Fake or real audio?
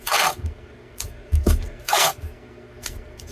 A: fake